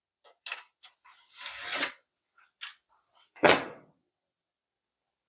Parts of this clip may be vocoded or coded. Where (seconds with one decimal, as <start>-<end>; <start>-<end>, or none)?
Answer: 1.7-2.4; 3.1-4.5